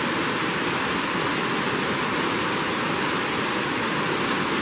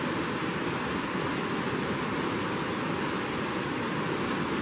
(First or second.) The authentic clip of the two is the first